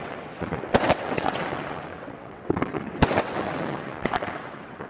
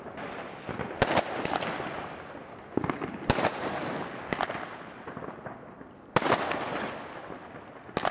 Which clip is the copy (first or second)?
first